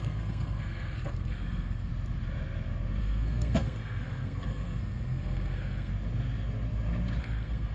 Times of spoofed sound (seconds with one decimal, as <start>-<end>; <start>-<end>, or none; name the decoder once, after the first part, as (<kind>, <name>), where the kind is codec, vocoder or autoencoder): 0.0-1.9 (codec, SNAC); 3.0-5.9; 7.2-7.7